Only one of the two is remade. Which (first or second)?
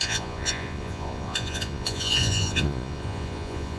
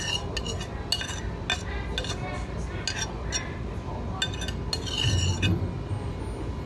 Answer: first